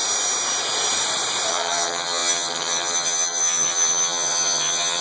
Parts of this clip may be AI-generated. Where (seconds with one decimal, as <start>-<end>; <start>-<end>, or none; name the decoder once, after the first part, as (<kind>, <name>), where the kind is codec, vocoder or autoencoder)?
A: 1.5-5.0 (vocoder, HiFi-GAN)